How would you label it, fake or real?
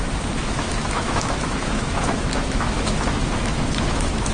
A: fake